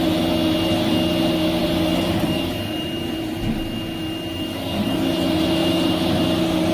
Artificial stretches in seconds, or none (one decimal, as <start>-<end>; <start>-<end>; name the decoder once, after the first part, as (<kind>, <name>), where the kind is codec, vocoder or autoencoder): 1.6-3.6 (vocoder, BigVGAN v2); 5.6-6.2